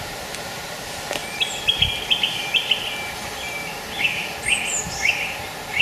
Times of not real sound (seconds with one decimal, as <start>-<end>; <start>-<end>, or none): 0.0-1.2; 4.7-5.8